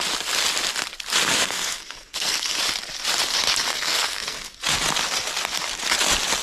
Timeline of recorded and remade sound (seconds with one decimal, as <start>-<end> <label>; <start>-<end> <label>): 0.0-1.3 recorded; 1.3-2.6 remade; 2.6-3.7 recorded; 3.7-4.6 remade; 4.6-6.4 recorded